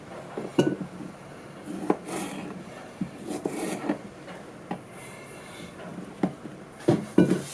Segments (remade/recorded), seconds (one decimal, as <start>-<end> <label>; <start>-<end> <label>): 0.0-7.5 recorded